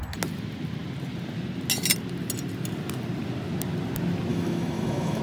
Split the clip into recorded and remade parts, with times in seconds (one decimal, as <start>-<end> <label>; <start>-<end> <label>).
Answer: 0.0-4.3 recorded; 4.3-5.2 remade